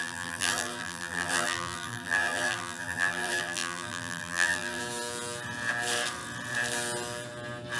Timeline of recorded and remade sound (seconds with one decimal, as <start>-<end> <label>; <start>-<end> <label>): 0.0-4.8 remade; 4.8-7.8 recorded